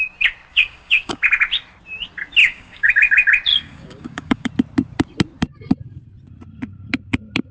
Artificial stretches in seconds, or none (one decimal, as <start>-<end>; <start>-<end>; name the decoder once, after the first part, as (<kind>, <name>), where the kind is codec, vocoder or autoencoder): 0.5-1.2 (codec, DAC); 2.4-2.9; 3.5-4.5